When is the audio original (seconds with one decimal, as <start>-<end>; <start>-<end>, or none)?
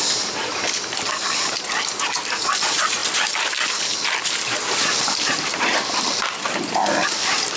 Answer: none